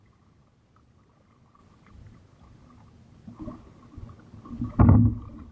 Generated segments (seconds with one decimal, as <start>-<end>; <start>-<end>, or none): none